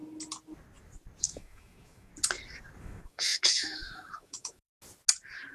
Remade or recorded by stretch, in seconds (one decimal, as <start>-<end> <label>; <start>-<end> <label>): 0.0-1.2 recorded; 1.2-2.1 remade; 2.1-2.8 recorded; 2.8-4.7 remade; 4.7-5.5 recorded